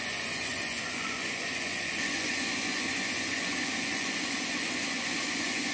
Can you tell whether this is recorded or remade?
remade